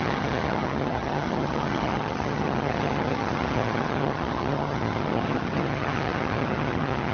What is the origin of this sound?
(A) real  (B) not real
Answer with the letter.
B